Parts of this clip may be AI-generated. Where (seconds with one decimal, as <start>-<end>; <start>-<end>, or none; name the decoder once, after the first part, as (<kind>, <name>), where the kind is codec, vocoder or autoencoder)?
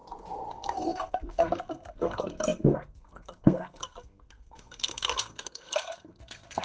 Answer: 0.5-6.6 (codec, SNAC)